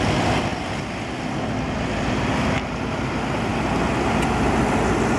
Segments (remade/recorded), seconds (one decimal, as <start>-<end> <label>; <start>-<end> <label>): 0.0-5.2 recorded